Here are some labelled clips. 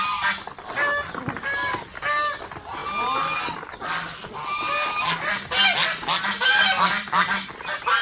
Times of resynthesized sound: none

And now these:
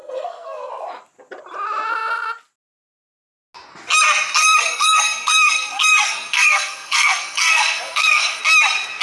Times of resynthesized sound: 0.0-0.7 (codec, SNAC); 4.4-8.4